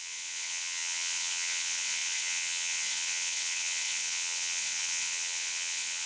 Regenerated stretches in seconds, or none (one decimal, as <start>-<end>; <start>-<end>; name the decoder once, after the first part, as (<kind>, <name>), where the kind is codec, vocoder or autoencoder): 0.0-6.1 (vocoder, WaveNeXt)